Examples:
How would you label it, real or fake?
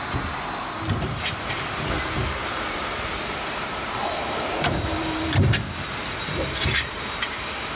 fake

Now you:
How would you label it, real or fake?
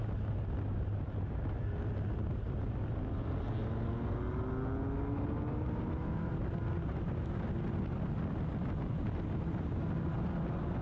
real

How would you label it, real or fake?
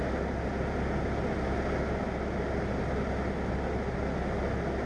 real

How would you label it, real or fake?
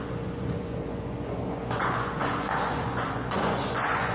fake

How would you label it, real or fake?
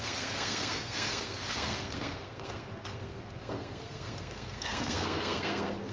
fake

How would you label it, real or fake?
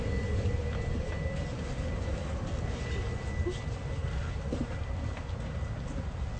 real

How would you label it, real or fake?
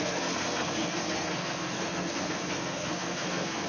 fake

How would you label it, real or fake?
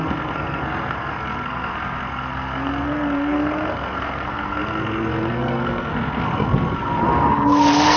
fake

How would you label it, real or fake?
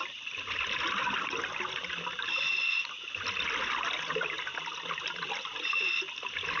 real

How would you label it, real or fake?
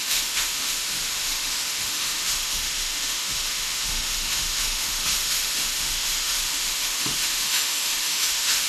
fake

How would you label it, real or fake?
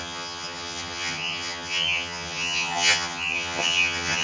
fake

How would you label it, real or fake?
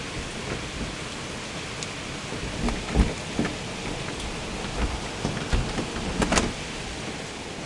real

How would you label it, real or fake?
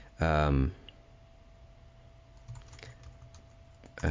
real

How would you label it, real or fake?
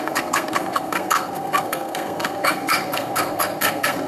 fake